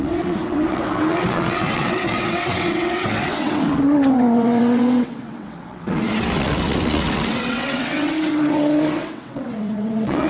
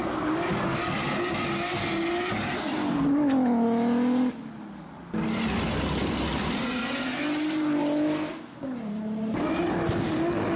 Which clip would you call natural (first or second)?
second